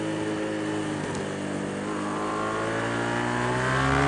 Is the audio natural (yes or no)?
yes